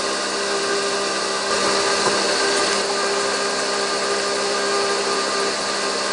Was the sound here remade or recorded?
recorded